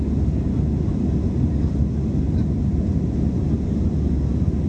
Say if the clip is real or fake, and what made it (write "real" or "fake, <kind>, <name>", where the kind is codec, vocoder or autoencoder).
real